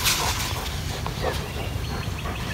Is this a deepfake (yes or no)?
no